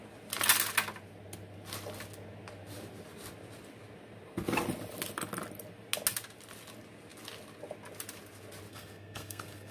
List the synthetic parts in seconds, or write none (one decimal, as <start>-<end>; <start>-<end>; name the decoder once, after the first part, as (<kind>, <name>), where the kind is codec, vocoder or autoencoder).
8.7-9.7 (codec, SNAC)